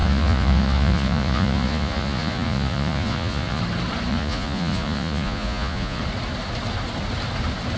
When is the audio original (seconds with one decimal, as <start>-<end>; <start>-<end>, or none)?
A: 3.6-4.1; 6.0-7.8